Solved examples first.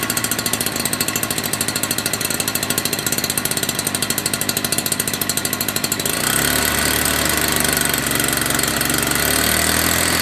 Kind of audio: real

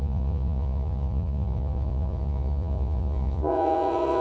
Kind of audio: fake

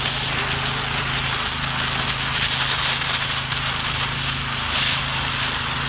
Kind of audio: real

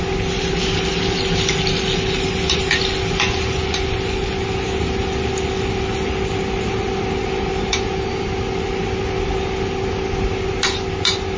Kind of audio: real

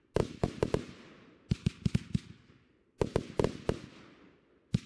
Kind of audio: real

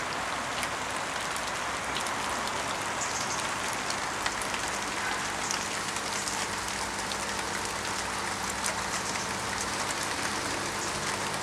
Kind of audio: real